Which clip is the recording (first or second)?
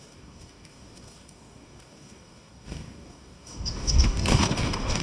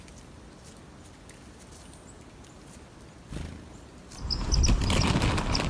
second